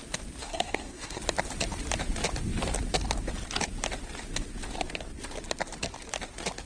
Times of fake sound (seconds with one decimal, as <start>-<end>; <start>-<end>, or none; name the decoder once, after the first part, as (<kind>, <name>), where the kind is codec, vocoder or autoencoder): 0.4-1.2 (codec, SNAC)